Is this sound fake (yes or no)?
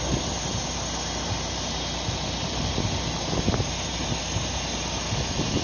no